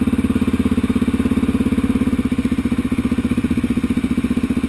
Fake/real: real